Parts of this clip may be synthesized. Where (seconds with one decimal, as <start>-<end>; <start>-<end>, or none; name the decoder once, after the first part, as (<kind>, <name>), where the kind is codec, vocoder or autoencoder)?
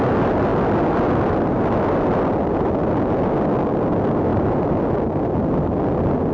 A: none